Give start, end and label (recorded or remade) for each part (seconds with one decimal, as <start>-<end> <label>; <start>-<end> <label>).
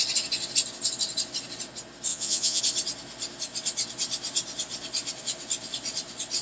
0.0-2.1 recorded; 2.1-2.6 remade; 2.6-6.4 recorded